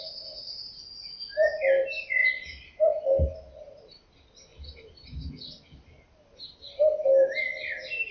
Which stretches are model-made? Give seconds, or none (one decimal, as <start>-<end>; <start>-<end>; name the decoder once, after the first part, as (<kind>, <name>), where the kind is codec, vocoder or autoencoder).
none